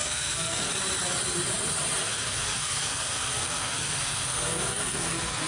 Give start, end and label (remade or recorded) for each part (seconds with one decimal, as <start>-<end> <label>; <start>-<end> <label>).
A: 0.0-0.7 remade; 0.7-2.0 recorded; 2.0-5.5 remade